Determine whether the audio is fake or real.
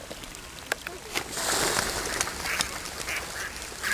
real